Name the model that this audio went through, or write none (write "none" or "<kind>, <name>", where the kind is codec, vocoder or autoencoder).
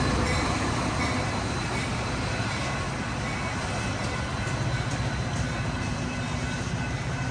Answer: none